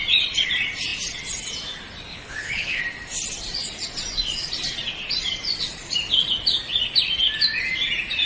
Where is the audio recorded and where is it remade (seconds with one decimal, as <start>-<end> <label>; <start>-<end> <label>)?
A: 0.0-2.1 recorded; 2.1-2.8 remade; 2.8-8.3 recorded